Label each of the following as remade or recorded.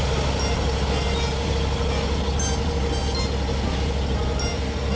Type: recorded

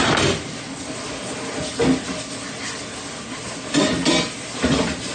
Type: recorded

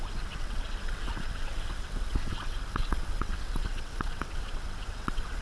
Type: remade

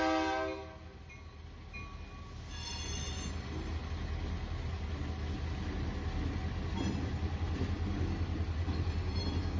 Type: recorded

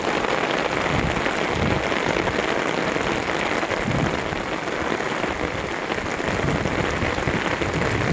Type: recorded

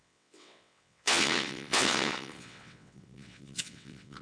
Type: remade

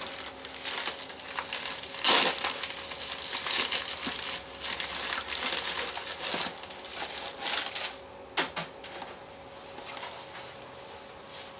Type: recorded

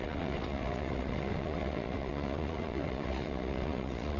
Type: remade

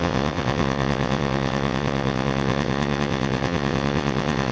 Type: remade